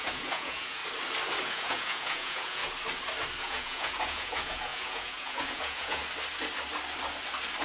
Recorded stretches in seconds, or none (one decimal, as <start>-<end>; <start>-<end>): 0.8-1.4; 2.6-3.4; 6.0-7.6